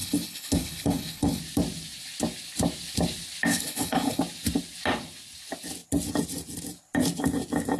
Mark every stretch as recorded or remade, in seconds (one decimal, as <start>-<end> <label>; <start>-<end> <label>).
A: 0.0-1.4 remade; 1.4-3.5 recorded; 3.5-4.2 remade; 4.2-7.8 recorded